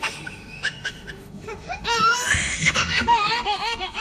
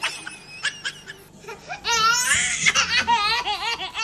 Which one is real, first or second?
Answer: second